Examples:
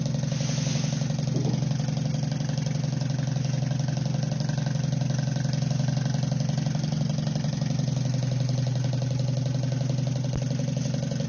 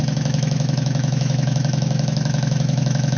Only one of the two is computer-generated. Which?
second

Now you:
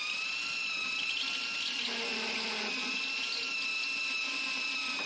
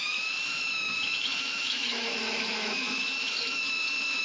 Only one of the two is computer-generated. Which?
second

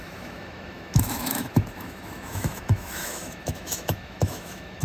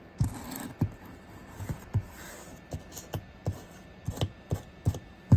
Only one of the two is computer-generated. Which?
first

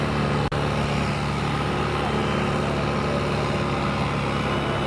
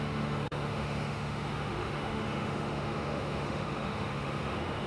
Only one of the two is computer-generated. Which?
second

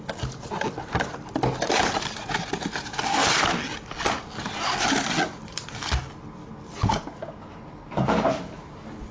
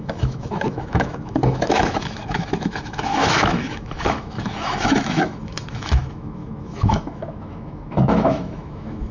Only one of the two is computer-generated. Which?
second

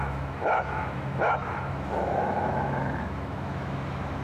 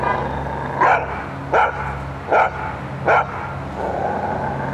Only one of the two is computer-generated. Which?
first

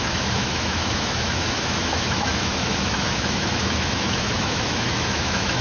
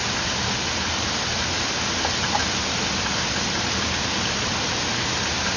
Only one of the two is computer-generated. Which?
first